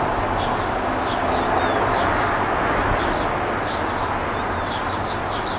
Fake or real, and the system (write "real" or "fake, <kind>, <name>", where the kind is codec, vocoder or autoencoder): real